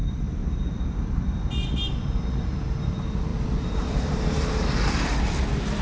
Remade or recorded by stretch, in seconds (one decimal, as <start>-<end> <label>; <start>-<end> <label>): 0.0-0.8 remade; 0.8-3.3 recorded; 3.3-4.1 remade; 4.1-5.8 recorded